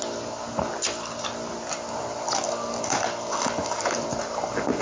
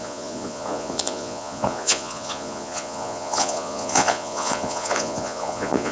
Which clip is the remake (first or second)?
second